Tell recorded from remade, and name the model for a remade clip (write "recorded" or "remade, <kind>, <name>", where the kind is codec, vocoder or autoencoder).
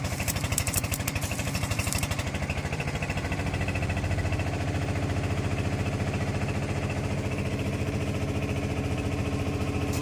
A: remade, vocoder, BigVGAN v2